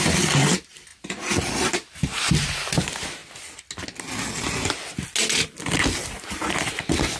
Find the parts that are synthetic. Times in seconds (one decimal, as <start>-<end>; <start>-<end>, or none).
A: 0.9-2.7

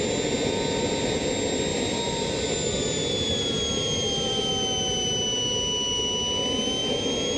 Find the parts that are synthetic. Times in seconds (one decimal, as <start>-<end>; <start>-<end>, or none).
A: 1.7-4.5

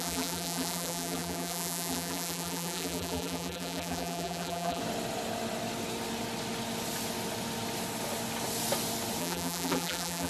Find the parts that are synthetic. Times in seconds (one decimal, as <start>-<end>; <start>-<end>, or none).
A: 0.0-4.8; 9.2-10.3

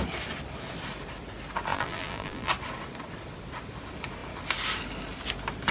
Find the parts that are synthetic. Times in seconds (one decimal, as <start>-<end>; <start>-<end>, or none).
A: 1.7-2.5